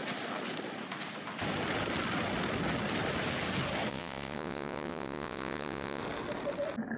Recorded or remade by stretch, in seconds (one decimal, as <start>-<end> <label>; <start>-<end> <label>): 0.0-3.9 recorded; 3.9-6.0 remade; 6.0-7.0 recorded